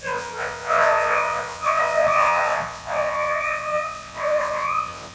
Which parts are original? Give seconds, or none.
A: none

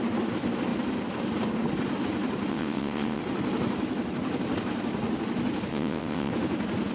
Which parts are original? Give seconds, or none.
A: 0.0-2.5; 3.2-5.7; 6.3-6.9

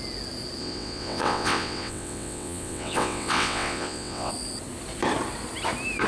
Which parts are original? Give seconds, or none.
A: 0.0-0.6; 4.3-6.1

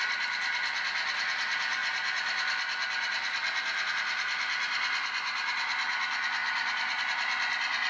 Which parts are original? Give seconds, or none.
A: 0.0-7.9